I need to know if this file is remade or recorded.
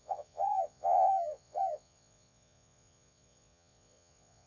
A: remade